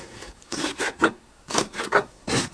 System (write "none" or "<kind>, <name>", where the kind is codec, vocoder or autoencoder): codec, SNAC